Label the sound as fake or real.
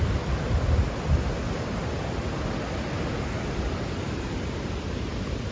real